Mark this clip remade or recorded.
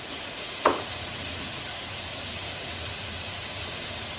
remade